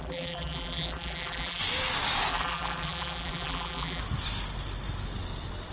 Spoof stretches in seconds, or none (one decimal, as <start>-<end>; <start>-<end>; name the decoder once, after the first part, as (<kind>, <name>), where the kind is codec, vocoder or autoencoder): 0.0-1.6 (vocoder, BigVGAN v2); 2.3-4.0